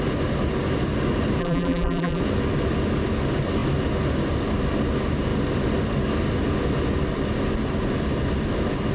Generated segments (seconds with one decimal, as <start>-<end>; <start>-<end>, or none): 1.4-2.2